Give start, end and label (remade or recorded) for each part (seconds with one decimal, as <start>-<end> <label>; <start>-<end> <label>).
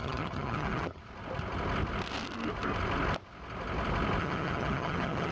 0.0-1.0 remade; 1.0-4.2 recorded; 4.2-5.3 remade